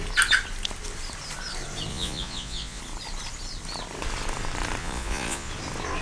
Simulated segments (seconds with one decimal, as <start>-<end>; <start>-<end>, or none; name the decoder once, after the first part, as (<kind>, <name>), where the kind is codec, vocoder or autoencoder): 1.9-2.8 (vocoder, Vocos); 4.8-5.5